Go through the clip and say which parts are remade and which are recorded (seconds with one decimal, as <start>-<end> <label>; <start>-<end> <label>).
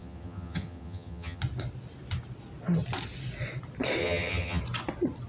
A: 0.0-1.4 remade; 1.4-4.0 recorded; 4.0-4.6 remade; 4.6-5.3 recorded